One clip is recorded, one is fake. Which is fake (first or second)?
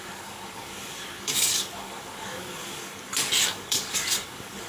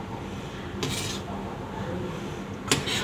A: first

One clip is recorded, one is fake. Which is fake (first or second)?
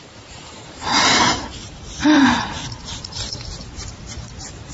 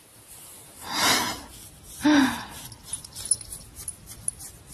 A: first